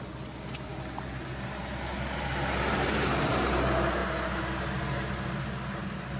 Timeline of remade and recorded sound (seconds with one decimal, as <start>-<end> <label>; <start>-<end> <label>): 0.0-4.0 remade; 4.0-4.6 recorded; 4.6-6.2 remade